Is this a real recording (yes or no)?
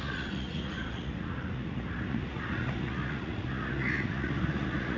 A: no